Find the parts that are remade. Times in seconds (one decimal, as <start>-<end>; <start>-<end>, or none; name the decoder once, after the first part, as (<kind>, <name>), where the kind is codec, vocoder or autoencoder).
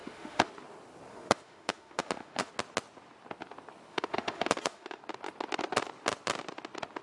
0.0-0.5 (autoencoder, DAC-VAE); 1.1-2.5; 3.9-5.0